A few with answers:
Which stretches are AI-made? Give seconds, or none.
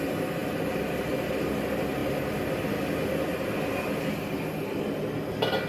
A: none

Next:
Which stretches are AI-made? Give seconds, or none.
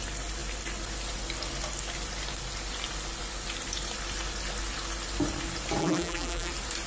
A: 5.8-6.5 (vocoder, BigVGAN v2)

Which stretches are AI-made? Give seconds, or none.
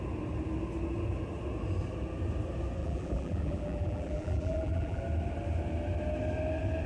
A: 2.8-5.0 (vocoder, BigVGAN v2)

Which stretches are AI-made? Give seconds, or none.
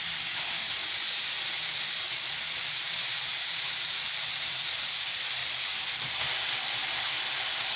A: 0.0-0.8 (vocoder, BigVGAN v2); 1.7-5.4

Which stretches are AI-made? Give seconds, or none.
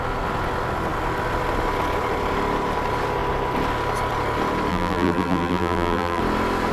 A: 4.7-6.2 (vocoder, BigVGAN v2)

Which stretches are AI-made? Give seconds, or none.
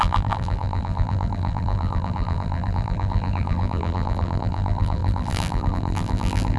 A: 0.0-6.6 (vocoder, BigVGAN v2)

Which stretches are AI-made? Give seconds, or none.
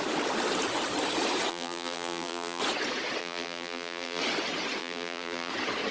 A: 1.5-2.6 (vocoder, BigVGAN v2); 3.2-4.2; 4.8-5.5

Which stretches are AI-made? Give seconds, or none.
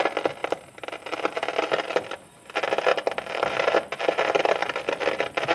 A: 0.4-1.5 (vocoder, BigVGAN v2); 2.9-4.9